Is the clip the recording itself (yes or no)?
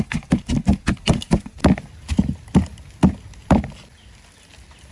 yes